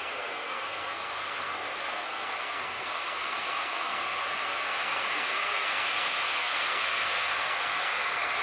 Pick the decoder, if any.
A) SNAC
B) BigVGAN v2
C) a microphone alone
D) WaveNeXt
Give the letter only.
A